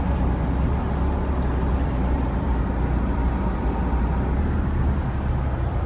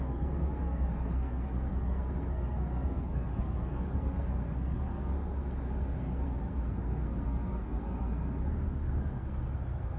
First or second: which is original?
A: first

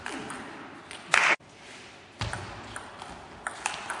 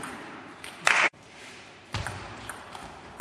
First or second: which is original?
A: first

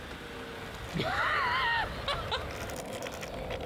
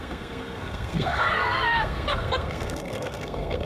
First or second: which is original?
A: first